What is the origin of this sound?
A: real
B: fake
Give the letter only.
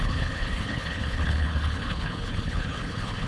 B